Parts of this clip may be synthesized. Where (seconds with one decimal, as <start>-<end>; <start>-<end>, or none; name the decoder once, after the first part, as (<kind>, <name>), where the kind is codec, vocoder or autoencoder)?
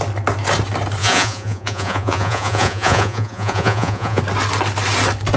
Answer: 1.0-4.2 (vocoder, Vocos)